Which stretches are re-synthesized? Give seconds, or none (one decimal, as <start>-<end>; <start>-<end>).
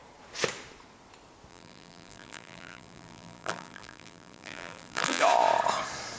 1.5-5.2